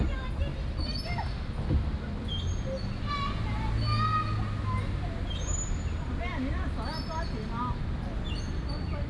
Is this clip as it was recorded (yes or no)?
yes